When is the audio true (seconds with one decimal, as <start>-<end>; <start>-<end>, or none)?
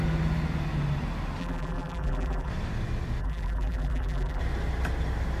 0.0-1.4; 2.5-3.2; 4.4-5.4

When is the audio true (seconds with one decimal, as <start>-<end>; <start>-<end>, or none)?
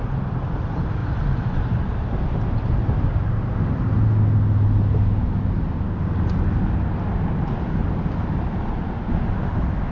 0.0-1.0; 4.2-7.8; 8.7-9.9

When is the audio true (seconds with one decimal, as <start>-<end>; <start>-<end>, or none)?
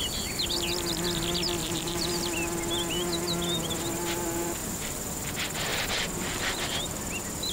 0.0-1.6; 2.1-4.6; 5.3-5.7; 7.1-7.5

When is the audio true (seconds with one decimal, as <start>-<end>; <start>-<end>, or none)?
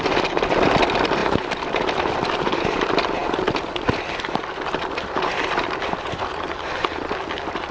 0.0-1.2; 2.3-3.2; 7.1-7.7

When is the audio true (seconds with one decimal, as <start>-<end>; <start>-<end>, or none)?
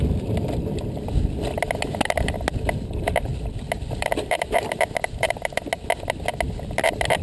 0.0-3.3; 5.6-7.2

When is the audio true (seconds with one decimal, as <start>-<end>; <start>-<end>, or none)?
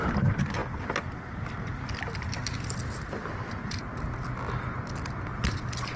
0.0-6.0